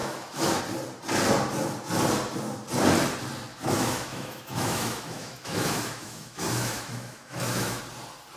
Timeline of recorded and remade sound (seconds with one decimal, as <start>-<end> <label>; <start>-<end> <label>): 0.0-0.6 remade; 0.6-3.5 recorded; 3.5-7.8 remade; 7.8-8.4 recorded